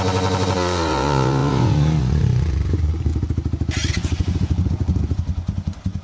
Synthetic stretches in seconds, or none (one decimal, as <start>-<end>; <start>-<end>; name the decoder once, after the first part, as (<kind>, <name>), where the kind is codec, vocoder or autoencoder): 0.0-3.1 (vocoder, Vocos); 3.9-6.0